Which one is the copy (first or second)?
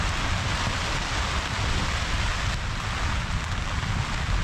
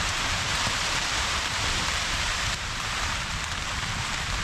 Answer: second